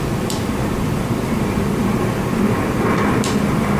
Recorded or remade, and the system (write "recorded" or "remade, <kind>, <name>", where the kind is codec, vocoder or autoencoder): remade, vocoder, BigVGAN v2